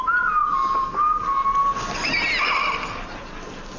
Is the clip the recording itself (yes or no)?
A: yes